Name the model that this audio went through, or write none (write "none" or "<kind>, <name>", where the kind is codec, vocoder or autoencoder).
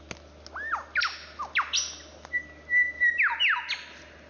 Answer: none